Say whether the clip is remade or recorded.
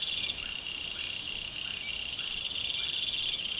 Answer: recorded